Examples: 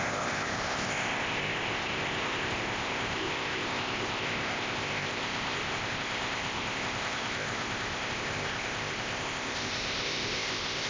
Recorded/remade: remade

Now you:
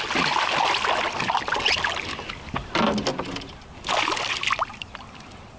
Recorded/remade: recorded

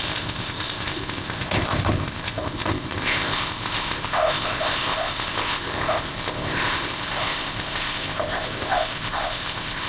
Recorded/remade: remade